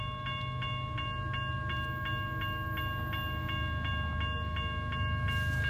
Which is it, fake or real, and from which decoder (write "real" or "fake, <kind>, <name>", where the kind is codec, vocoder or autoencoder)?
real